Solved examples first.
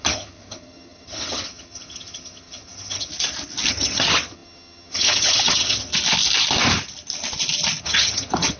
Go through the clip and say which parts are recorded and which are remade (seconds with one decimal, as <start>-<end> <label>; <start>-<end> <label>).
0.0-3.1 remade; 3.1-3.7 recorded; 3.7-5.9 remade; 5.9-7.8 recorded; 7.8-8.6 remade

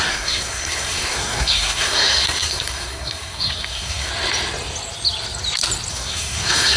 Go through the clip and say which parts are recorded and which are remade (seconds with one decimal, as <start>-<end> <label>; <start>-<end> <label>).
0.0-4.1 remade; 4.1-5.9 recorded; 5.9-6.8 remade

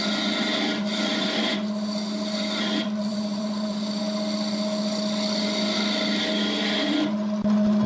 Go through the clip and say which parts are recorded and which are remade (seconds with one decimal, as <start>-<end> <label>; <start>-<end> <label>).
0.0-0.5 recorded; 0.5-1.4 remade; 1.4-2.8 recorded; 2.8-4.0 remade; 4.0-7.9 recorded

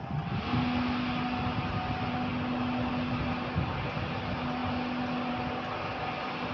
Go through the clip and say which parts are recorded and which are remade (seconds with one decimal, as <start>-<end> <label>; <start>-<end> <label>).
0.0-6.5 recorded

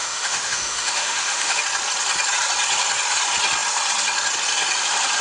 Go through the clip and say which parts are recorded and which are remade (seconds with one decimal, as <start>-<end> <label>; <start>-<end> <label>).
0.0-1.6 remade; 1.6-5.2 recorded

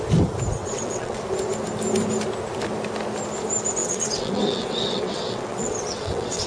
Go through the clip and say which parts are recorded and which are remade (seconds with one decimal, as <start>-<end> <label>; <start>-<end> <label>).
0.0-0.6 recorded; 0.6-1.2 remade; 1.2-3.8 recorded; 3.8-6.5 remade